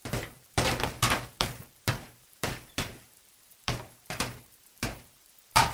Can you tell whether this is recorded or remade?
remade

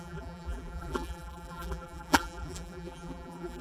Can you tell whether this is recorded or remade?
remade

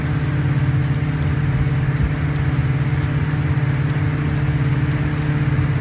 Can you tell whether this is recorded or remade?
recorded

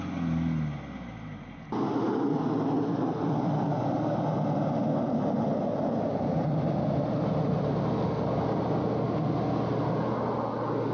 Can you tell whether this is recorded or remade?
recorded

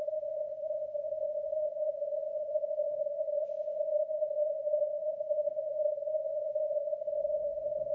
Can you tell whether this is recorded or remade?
recorded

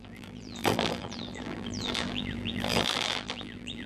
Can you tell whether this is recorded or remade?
remade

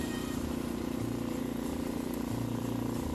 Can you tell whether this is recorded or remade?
remade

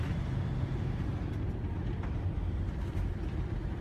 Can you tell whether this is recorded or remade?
remade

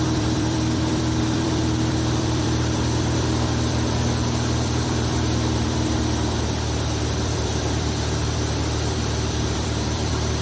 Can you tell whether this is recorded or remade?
remade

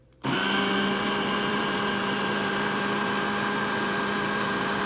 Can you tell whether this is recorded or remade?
remade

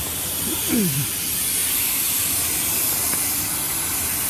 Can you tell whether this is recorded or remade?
remade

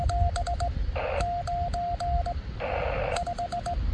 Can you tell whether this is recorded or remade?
recorded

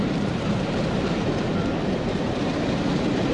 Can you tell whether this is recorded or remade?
remade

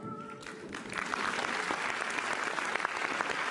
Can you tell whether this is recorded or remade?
recorded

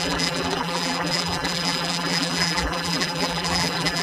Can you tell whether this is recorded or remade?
remade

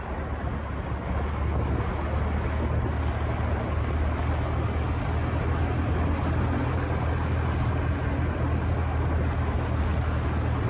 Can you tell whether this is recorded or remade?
recorded